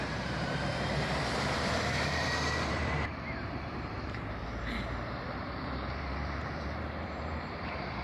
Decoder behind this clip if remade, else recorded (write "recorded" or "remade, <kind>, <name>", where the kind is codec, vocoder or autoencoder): remade, vocoder, BigVGAN v2